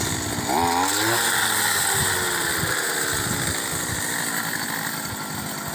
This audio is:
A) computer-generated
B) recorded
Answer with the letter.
B